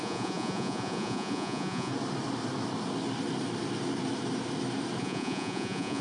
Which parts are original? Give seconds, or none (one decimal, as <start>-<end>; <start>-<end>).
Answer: 1.9-5.0